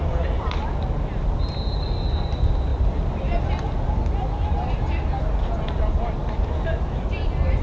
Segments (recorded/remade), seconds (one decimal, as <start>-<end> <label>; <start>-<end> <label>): 0.0-7.6 recorded